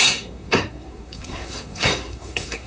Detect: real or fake fake